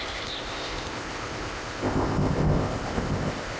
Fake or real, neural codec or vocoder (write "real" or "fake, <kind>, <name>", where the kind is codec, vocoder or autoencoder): fake, codec, ZipCodec